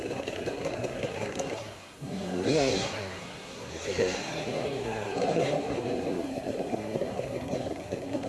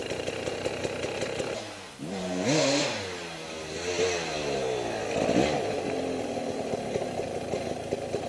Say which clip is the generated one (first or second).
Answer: first